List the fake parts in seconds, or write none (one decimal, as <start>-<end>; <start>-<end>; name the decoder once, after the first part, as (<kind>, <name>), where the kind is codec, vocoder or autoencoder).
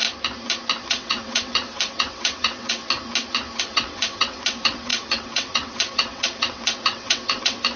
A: 0.8-2.8 (vocoder, WaveNeXt); 3.6-7.8